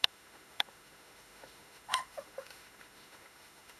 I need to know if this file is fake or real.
fake